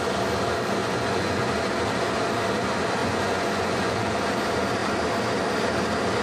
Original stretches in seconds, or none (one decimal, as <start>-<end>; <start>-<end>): 0.0-0.8; 1.5-3.0; 4.1-6.2